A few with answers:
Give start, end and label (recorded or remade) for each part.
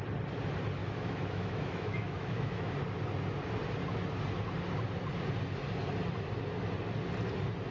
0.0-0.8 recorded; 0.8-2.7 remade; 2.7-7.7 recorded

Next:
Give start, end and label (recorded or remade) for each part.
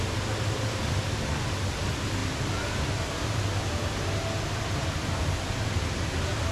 0.0-6.5 recorded